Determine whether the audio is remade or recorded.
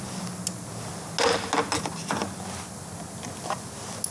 recorded